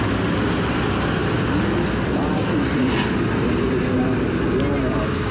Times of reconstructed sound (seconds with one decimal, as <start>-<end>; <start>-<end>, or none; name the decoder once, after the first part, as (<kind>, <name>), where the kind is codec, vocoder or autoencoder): none